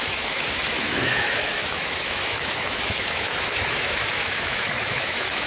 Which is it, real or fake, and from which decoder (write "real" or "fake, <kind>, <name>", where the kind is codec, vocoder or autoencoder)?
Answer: fake, autoencoder, DAC-VAE